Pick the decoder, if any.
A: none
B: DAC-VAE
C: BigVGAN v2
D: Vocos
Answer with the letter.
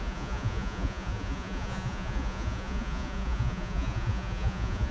D